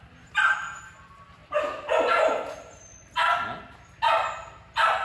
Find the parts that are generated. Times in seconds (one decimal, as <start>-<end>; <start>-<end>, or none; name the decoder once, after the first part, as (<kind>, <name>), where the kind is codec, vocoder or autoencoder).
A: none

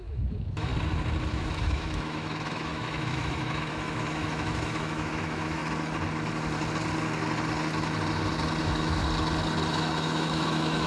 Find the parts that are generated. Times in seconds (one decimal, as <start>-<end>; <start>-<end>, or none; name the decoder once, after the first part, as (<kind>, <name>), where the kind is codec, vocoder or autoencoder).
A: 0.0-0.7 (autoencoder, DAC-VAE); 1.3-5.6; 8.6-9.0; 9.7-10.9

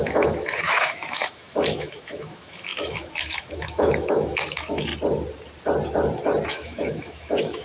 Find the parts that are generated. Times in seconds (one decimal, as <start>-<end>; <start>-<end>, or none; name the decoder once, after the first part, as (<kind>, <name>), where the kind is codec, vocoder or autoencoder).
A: 0.0-4.9 (autoencoder, DAC-VAE); 6.5-7.6